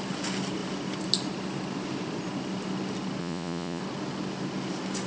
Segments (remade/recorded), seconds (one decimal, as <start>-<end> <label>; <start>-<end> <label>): 0.0-3.2 recorded; 3.2-3.8 remade; 3.8-5.1 recorded